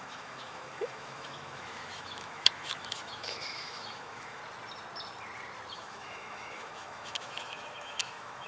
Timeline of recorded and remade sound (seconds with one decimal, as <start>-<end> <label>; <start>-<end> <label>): 0.0-4.4 remade; 4.4-5.7 recorded; 5.7-8.5 remade